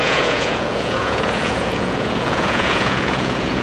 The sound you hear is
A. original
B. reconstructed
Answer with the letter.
B